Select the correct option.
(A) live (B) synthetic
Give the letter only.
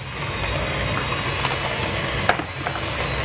A